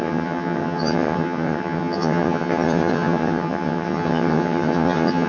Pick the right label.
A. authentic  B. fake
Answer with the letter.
B